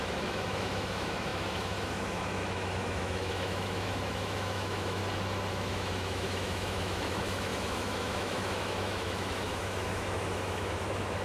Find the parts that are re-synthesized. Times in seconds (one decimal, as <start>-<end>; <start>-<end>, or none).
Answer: 0.0-5.0; 5.5-11.2